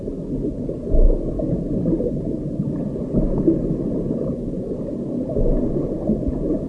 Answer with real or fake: real